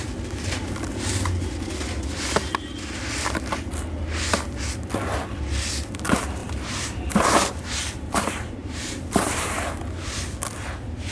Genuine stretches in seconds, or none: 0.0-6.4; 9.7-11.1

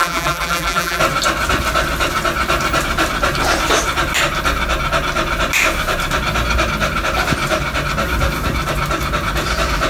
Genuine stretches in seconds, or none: 1.0-9.9

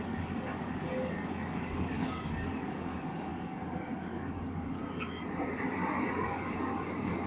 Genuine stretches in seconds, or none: 4.8-6.1

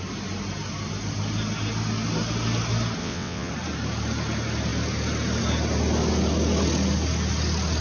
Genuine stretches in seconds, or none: 0.0-3.0; 3.5-7.8